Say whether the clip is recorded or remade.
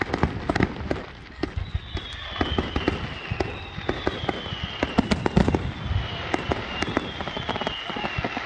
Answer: recorded